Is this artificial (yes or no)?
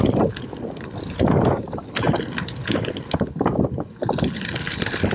no